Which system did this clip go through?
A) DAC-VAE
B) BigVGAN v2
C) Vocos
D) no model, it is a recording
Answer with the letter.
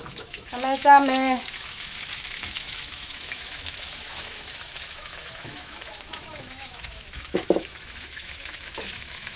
A